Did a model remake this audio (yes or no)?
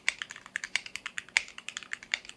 yes